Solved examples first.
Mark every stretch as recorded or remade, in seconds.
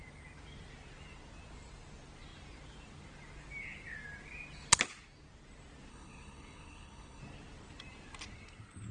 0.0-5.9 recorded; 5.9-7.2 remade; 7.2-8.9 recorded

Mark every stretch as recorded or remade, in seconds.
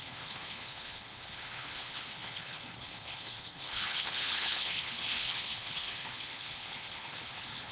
0.0-7.7 remade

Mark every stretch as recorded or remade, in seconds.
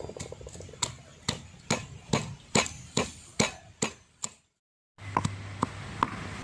0.0-6.4 recorded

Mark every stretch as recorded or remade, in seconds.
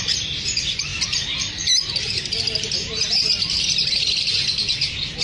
0.0-5.2 recorded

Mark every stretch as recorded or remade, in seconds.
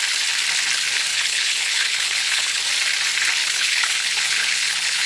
0.0-1.1 recorded; 1.1-2.6 remade; 2.6-3.4 recorded; 3.4-5.1 remade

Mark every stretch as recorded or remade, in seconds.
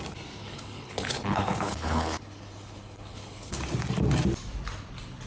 0.0-0.4 recorded; 0.4-3.6 remade; 3.6-5.3 recorded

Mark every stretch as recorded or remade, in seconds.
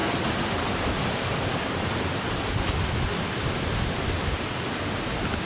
0.0-5.5 recorded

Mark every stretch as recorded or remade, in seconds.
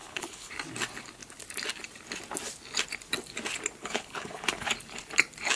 0.0-0.5 remade; 0.5-3.8 recorded; 3.8-4.7 remade; 4.7-5.6 recorded